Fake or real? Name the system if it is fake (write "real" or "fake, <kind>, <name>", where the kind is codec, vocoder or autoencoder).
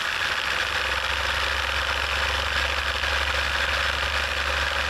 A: real